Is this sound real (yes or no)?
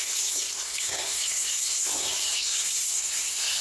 no